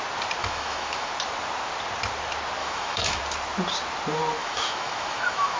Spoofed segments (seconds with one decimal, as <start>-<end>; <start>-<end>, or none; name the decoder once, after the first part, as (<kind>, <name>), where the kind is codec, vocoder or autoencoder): 0.4-1.1 (autoencoder, DAC-VAE); 2.6-3.2; 4.4-5.6